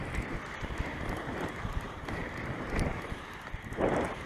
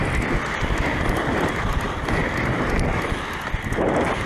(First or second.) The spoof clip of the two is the first